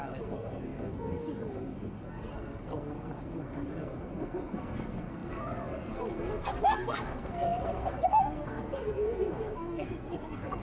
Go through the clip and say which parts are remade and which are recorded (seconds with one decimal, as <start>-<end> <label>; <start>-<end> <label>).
0.0-10.6 remade